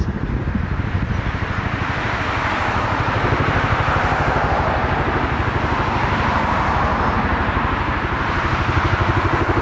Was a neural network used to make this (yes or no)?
no